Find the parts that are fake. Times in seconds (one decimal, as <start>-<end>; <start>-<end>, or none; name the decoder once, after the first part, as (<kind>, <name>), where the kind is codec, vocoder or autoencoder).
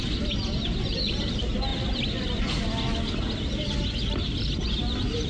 none